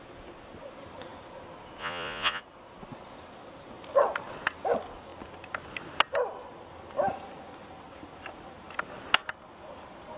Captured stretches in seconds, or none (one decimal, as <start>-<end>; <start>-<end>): 0.0-1.8; 2.4-10.2